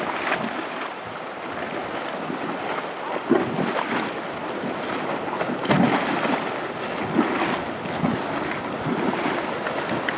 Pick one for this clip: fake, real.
real